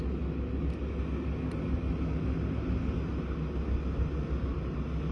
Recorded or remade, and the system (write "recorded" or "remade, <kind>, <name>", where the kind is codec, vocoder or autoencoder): recorded